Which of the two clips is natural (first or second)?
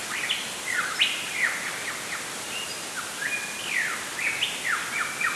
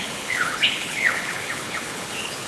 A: first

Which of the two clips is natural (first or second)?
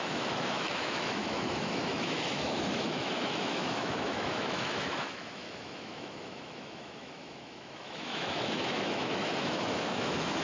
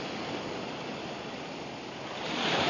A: second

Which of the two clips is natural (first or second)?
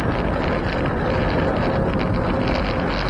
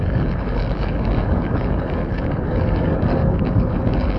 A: first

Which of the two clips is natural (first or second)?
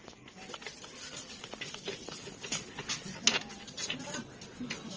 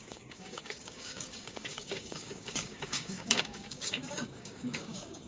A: first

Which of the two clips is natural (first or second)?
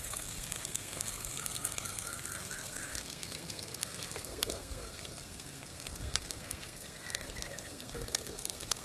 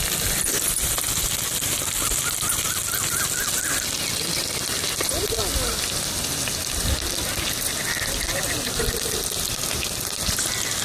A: second